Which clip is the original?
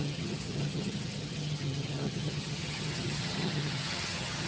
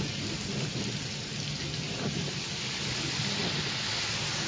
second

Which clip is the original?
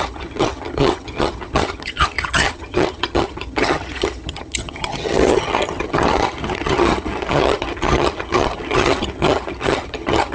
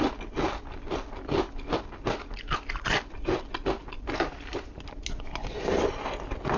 second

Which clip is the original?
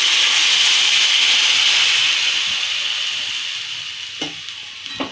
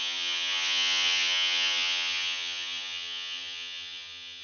first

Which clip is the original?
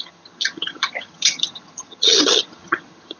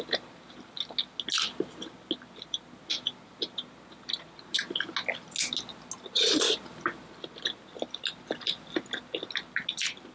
second